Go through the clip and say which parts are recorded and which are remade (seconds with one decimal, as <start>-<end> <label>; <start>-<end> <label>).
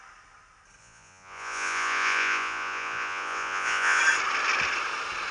0.0-0.8 recorded; 0.8-4.0 remade; 4.0-5.3 recorded